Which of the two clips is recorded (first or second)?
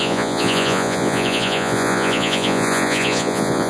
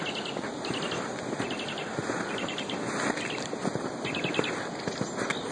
second